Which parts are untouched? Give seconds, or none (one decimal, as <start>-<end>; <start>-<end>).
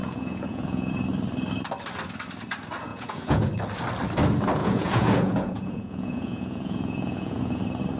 0.9-2.9; 3.5-4.6; 7.6-8.0